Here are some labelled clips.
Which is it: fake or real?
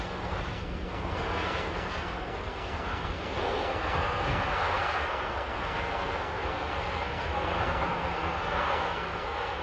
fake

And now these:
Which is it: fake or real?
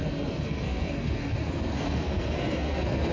fake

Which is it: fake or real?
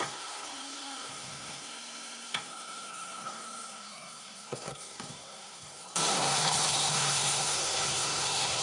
fake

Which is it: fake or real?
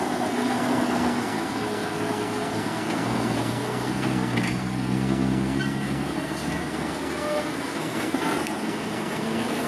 fake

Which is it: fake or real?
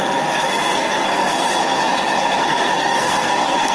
fake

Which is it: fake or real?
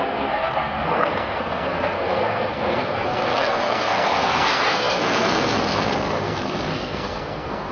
fake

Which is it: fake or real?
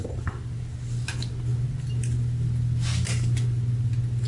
real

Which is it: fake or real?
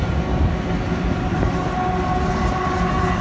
real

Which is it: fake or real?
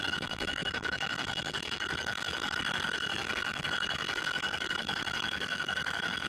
fake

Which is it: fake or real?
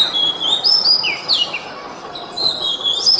real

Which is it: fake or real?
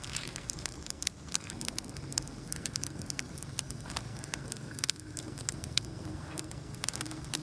fake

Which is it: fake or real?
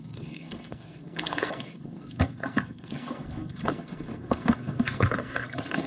fake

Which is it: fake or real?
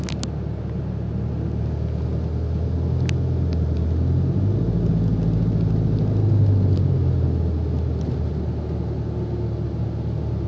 real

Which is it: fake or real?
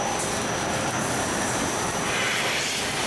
real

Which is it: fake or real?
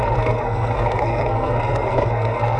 fake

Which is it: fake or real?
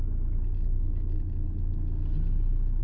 real